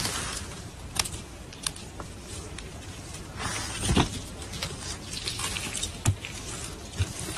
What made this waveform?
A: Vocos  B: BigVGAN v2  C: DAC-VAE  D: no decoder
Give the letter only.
D